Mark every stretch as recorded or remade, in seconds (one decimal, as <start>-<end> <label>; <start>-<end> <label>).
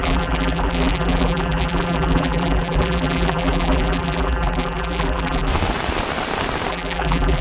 0.0-5.5 remade; 5.5-6.7 recorded; 6.7-7.4 remade